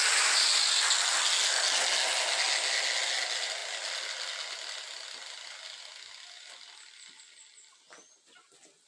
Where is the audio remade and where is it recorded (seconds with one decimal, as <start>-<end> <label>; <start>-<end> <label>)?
0.0-8.9 recorded